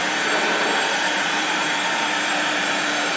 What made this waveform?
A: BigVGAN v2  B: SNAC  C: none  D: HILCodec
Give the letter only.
A